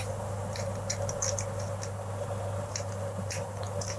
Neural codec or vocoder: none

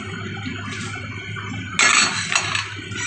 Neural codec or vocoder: none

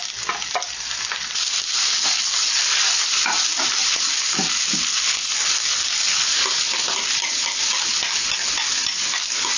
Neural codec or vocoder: none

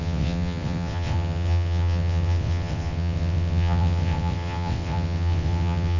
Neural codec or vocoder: vocoder, WaveNeXt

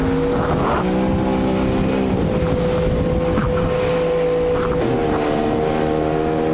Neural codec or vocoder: none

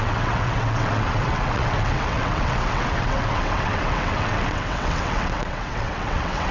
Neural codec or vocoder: vocoder, WaveNeXt